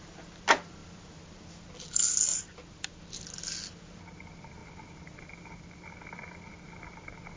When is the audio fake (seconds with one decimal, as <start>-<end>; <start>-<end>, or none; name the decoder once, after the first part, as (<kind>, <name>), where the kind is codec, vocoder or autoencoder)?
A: 0.8-1.4 (vocoder, BigVGAN v2); 2.3-3.0; 4.6-5.5